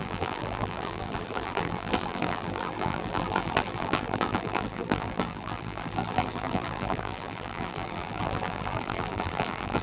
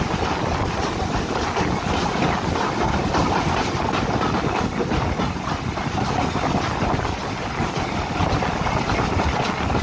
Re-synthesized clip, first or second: first